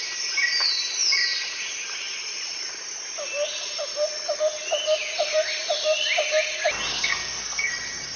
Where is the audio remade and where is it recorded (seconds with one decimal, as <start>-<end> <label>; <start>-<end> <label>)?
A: 0.0-6.9 recorded; 6.9-7.7 remade; 7.7-8.2 recorded